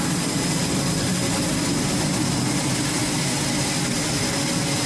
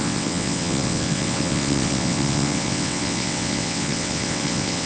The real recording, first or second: first